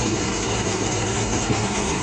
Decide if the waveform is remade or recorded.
remade